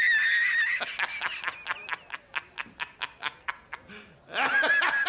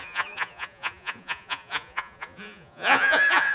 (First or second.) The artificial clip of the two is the second